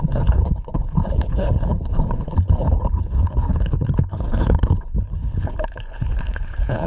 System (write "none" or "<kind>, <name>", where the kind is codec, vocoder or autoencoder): codec, HILCodec